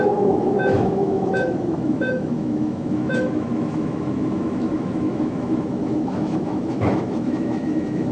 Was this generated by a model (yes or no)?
yes